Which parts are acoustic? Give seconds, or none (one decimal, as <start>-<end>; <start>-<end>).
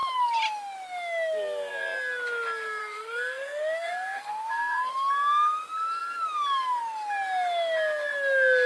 0.0-2.8; 4.9-8.7